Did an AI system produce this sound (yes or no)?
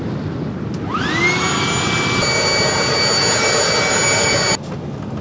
no